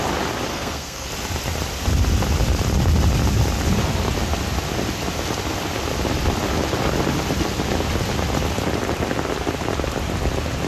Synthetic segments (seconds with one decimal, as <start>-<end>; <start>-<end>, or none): 0.5-1.1